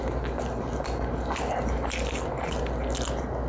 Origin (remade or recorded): recorded